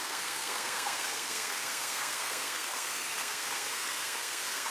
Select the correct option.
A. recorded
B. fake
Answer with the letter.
B